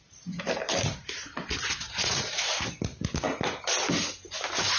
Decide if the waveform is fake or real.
real